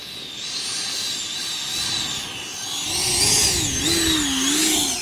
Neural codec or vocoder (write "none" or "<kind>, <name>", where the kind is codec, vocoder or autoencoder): none